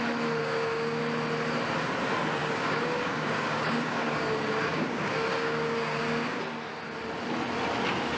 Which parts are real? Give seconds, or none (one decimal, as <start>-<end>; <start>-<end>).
0.0-0.4; 1.0-2.4; 6.4-8.2